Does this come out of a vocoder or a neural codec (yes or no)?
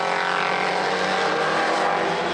no